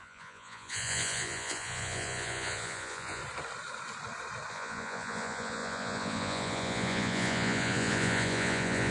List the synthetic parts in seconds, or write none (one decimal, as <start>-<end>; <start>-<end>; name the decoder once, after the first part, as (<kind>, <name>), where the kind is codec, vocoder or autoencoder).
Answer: 0.0-3.2 (vocoder, Vocos); 4.5-8.9